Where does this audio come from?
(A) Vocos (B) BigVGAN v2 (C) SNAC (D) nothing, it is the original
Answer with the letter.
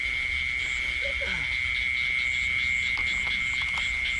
D